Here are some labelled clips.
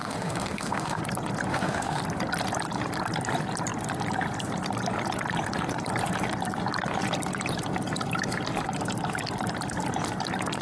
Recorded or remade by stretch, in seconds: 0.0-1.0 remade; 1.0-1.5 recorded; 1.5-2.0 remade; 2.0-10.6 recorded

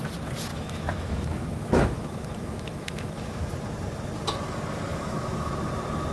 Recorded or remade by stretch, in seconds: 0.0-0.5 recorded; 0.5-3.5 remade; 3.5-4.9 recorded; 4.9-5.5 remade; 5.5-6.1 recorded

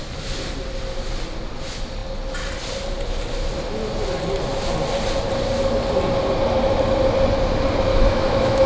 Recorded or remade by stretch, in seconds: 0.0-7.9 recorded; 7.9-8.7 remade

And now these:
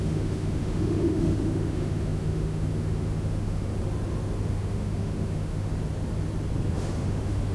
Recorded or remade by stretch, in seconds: 0.0-3.7 remade; 3.7-4.5 recorded; 4.5-5.7 remade; 5.7-6.7 recorded; 6.7-7.5 remade

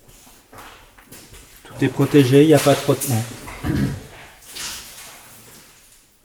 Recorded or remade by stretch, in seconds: 0.0-4.2 recorded; 4.2-4.8 remade; 4.8-6.2 recorded

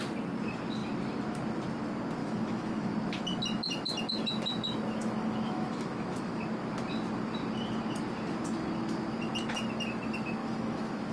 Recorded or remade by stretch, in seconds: 0.0-2.2 recorded; 2.2-2.9 remade; 2.9-5.0 recorded; 5.0-6.4 remade; 6.4-10.4 recorded; 10.4-11.1 remade

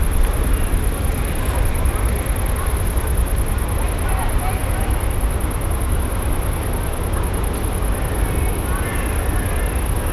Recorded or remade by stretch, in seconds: 0.0-10.1 recorded

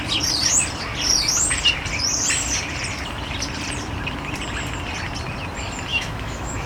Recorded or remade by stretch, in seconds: 0.0-5.9 recorded; 5.9-6.7 remade